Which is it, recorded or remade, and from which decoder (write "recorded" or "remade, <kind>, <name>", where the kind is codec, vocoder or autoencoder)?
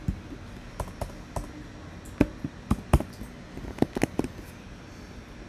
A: recorded